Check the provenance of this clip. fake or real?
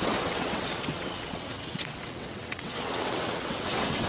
fake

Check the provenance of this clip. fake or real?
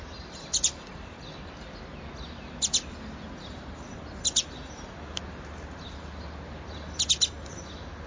real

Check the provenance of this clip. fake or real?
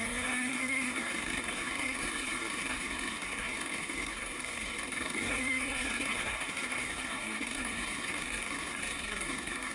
fake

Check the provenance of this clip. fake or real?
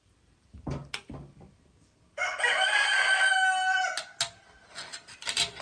real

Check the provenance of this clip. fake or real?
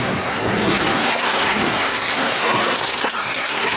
fake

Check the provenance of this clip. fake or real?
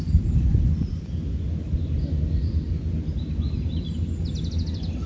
real